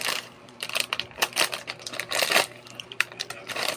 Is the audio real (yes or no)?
no